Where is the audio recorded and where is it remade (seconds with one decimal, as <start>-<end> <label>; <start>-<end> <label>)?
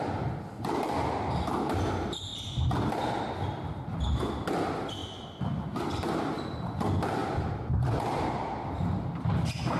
0.0-2.3 recorded; 2.3-3.2 remade; 3.2-7.2 recorded; 7.2-8.8 remade; 8.8-9.8 recorded